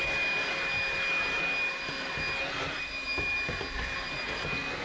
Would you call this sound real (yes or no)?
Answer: yes